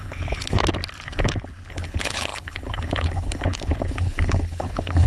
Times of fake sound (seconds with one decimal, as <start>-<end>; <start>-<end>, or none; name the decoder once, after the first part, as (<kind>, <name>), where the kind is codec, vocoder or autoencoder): 0.0-0.6 (codec, HILCodec); 1.7-5.1